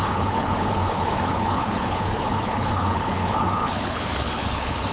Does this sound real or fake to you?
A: fake